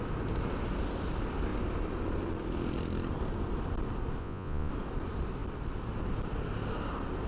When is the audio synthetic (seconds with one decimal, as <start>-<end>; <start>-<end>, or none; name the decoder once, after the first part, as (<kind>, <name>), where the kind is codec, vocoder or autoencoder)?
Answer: 4.2-4.7 (vocoder, Vocos)